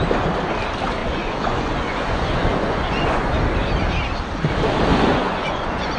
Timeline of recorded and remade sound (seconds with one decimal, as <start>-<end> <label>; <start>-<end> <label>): 0.0-1.0 recorded; 1.0-3.4 remade; 3.4-4.9 recorded; 4.9-6.0 remade